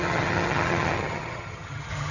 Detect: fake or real fake